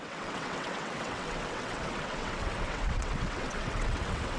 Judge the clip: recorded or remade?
remade